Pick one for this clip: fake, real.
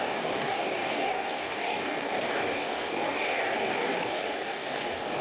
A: fake